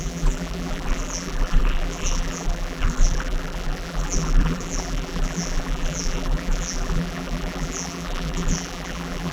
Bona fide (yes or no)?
no